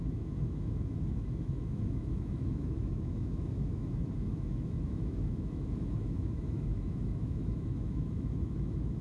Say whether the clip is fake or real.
fake